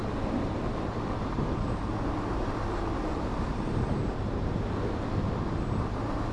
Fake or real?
fake